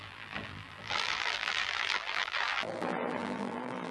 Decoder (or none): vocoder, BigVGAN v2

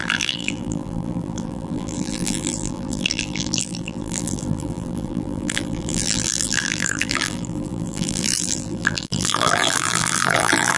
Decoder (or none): vocoder, BigVGAN v2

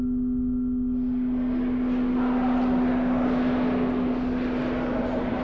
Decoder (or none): none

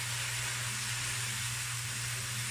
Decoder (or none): none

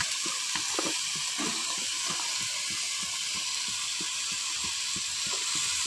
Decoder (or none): none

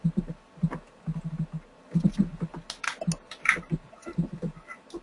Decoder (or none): none